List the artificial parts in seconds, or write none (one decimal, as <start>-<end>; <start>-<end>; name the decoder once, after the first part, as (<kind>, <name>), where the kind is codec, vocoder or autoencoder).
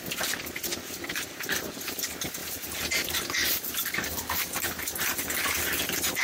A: none